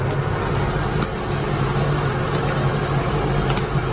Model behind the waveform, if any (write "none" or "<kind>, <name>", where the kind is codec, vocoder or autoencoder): none